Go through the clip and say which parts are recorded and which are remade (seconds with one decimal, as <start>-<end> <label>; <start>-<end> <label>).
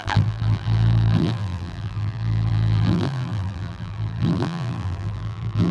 0.0-5.7 remade